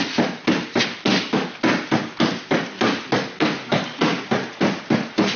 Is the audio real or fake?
real